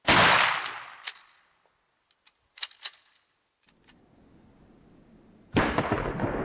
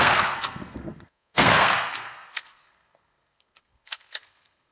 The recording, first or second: first